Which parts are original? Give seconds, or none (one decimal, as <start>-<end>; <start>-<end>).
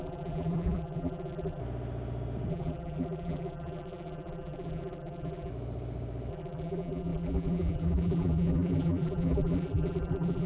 1.6-2.5; 5.5-6.3